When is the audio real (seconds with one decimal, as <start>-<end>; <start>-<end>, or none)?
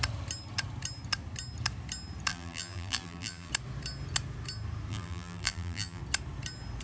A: 0.0-2.3; 3.5-4.9; 6.0-6.8